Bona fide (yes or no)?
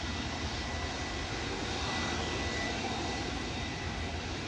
yes